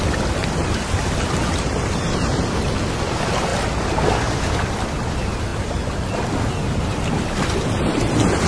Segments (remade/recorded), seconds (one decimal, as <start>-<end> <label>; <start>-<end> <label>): 0.0-8.5 recorded